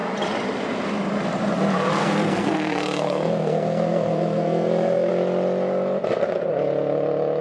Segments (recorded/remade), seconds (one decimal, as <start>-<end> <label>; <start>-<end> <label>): 0.0-2.0 recorded; 2.0-5.1 remade; 5.1-7.4 recorded

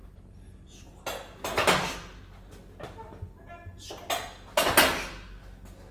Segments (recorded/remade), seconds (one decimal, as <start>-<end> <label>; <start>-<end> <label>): 0.0-5.9 recorded

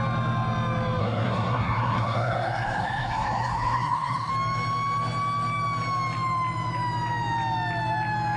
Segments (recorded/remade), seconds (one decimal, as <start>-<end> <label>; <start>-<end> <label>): 0.0-1.0 recorded; 1.0-4.3 remade; 4.3-8.4 recorded

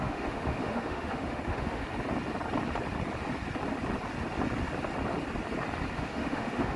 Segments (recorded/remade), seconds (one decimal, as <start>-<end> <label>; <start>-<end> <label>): 0.0-1.8 remade; 1.8-5.9 recorded; 5.9-6.8 remade

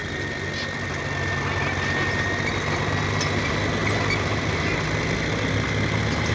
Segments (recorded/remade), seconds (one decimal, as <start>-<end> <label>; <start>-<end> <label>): 0.0-6.3 recorded

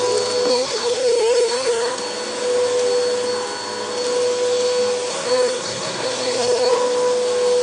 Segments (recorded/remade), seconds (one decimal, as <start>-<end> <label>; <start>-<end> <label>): 0.0-0.5 recorded; 0.5-2.0 remade; 2.0-5.1 recorded; 5.1-6.7 remade; 6.7-7.6 recorded

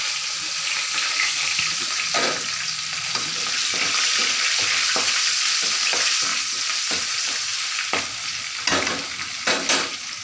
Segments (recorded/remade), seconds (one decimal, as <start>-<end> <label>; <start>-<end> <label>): 0.0-6.3 recorded; 6.3-7.1 remade; 7.1-10.2 recorded

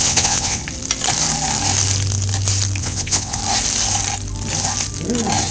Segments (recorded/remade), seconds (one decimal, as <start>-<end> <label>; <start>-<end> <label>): 0.0-0.6 remade; 0.6-2.8 recorded; 2.8-3.4 remade; 3.4-5.5 recorded